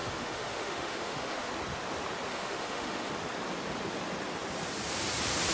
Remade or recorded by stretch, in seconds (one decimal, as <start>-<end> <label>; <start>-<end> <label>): 0.0-1.5 remade; 1.5-2.3 recorded; 2.3-3.1 remade; 3.1-5.5 recorded